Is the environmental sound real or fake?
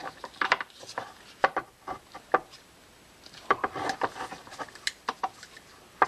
real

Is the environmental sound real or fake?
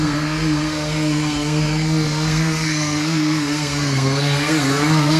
fake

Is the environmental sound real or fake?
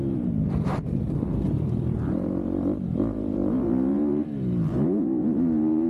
fake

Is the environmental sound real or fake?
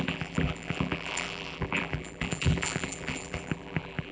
fake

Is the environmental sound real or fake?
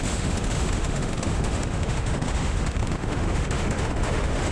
fake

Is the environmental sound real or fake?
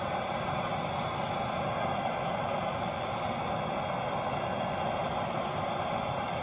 real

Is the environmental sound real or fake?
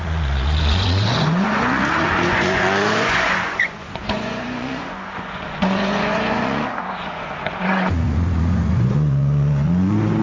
fake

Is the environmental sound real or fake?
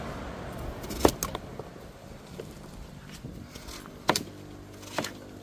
real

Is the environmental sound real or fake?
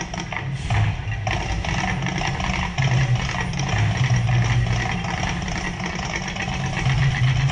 real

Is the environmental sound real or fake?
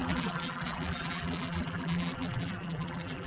fake